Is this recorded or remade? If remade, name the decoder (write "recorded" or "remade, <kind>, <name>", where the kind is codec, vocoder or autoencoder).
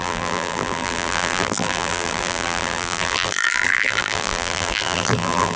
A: remade, vocoder, BigVGAN v2